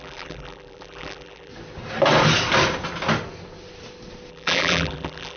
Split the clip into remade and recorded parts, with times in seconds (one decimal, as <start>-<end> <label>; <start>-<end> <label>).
0.0-1.5 remade; 1.5-4.3 recorded; 4.3-5.4 remade